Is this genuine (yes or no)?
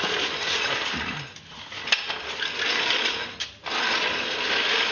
yes